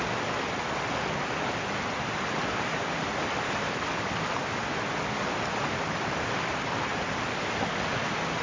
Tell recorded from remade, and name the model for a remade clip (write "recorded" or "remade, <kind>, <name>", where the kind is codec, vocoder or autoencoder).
recorded